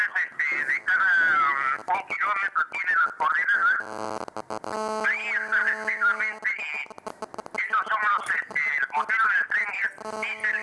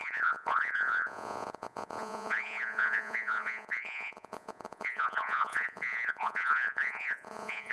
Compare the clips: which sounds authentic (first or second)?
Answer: first